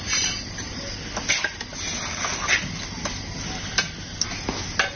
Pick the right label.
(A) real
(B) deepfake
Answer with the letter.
A